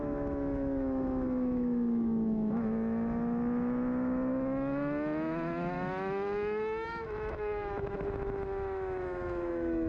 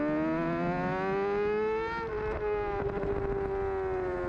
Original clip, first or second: second